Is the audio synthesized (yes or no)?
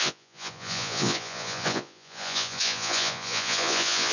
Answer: yes